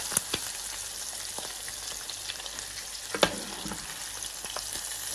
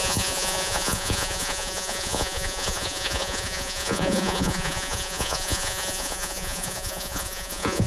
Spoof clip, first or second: second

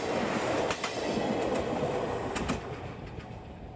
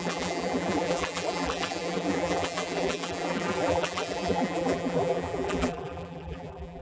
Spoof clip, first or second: second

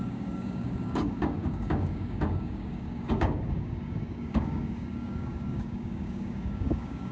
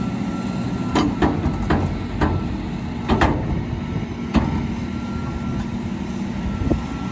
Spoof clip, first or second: first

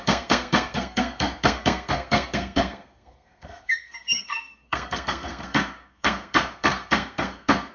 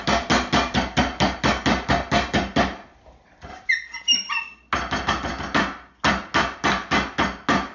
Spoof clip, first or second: first